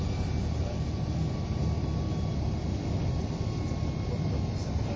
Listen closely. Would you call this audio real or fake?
fake